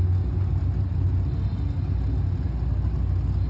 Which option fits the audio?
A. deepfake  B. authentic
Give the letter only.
B